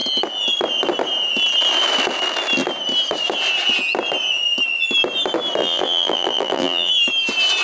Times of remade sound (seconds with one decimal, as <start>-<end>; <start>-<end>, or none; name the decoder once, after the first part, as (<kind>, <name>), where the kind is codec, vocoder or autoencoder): 5.6-6.9 (vocoder, BigVGAN v2)